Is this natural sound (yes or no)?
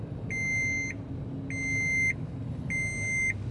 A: yes